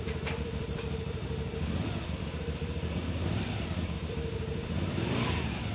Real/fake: fake